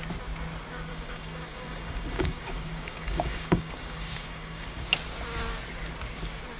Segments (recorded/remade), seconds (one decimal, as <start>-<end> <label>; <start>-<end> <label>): 0.0-0.9 recorded; 0.9-4.9 remade; 4.9-6.6 recorded